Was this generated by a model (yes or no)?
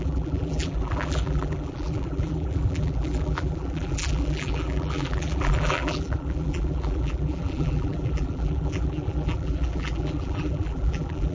yes